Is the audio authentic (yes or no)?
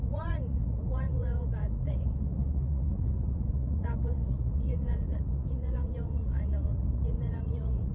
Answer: no